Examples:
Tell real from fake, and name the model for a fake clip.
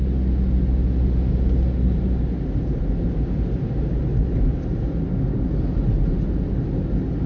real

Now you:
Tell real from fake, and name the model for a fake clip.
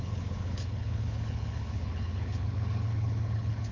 fake, codec, HILCodec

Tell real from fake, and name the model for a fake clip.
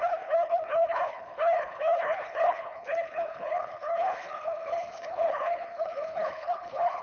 fake, codec, HILCodec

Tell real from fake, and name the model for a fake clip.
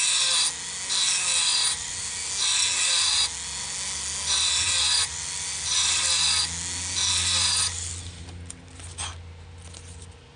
real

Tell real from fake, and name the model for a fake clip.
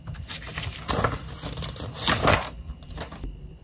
real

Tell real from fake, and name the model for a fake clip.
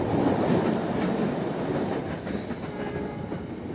real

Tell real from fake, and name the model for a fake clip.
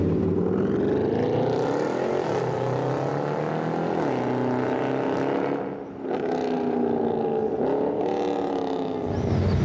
real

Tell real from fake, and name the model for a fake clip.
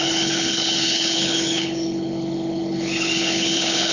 fake, codec, HILCodec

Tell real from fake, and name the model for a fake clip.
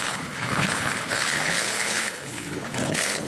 fake, codec, HILCodec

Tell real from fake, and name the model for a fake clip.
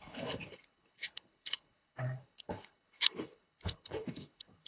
fake, codec, HILCodec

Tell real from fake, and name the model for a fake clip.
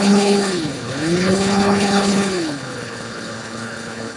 fake, codec, HILCodec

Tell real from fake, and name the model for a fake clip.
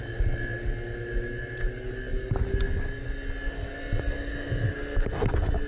real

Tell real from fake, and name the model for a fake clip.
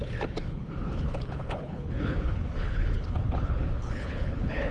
fake, codec, HILCodec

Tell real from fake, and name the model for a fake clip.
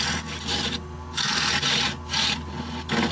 real